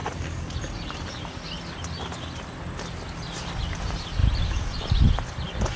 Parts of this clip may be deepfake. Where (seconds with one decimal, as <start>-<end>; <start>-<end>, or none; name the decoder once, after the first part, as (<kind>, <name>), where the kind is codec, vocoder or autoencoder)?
4.2-5.0 (vocoder, BigVGAN v2)